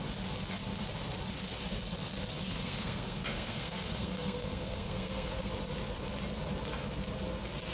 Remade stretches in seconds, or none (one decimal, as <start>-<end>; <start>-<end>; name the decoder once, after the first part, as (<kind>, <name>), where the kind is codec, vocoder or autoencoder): 2.5-5.5 (codec, SNAC)